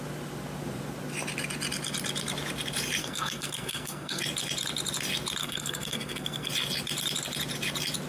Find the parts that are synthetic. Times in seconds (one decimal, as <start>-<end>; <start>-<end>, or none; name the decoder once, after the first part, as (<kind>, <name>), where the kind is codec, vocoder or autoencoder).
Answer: 3.0-4.2 (codec, SNAC); 5.4-6.5